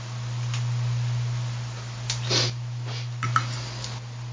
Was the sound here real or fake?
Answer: real